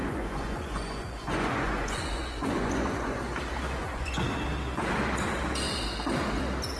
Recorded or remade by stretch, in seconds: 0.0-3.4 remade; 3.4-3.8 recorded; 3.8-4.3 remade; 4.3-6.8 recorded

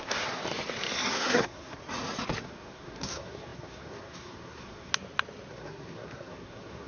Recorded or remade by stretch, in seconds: 0.0-0.4 remade; 0.4-1.1 recorded; 1.1-1.8 remade; 1.8-2.4 recorded; 2.4-4.9 remade; 4.9-5.5 recorded; 5.5-6.9 remade

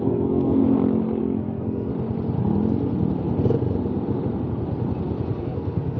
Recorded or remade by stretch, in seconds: 0.0-0.6 remade; 0.6-1.2 recorded; 1.2-1.9 remade; 1.9-5.4 recorded; 5.4-6.0 remade

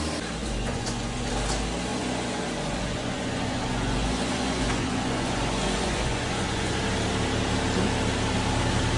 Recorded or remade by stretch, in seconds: 0.0-0.4 recorded; 0.4-1.3 remade; 1.3-1.9 recorded; 1.9-6.8 remade; 6.8-9.0 recorded

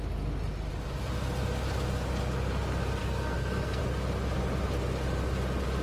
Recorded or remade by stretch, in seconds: 0.0-3.0 recorded; 3.0-3.8 remade; 3.8-5.8 recorded

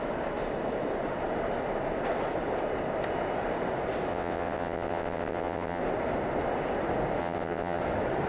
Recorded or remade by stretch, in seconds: 0.0-4.1 recorded; 4.1-5.8 remade; 5.8-7.2 recorded; 7.2-7.8 remade; 7.8-8.3 recorded

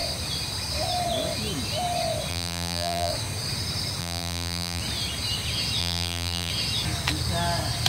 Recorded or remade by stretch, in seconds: 0.0-2.3 recorded; 2.3-3.1 remade; 3.1-4.0 recorded; 4.0-4.8 remade; 4.8-5.8 recorded; 5.8-6.5 remade; 6.5-7.9 recorded

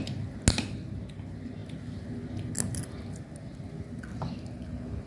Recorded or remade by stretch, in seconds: 0.0-5.1 recorded